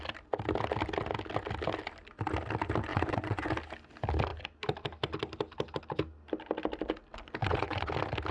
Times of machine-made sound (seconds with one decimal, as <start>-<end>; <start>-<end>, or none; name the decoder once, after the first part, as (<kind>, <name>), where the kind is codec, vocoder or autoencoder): 2.9-3.5 (vocoder, WaveNeXt); 7.4-7.9